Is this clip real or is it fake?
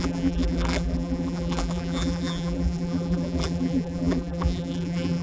fake